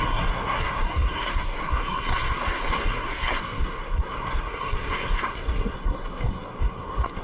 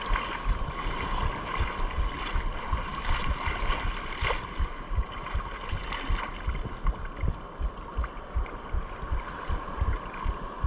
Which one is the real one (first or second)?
second